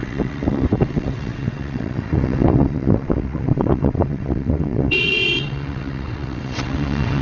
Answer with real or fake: fake